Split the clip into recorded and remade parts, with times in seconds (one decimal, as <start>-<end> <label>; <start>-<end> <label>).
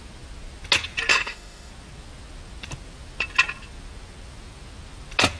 0.0-1.1 recorded; 1.1-1.7 remade; 1.7-5.4 recorded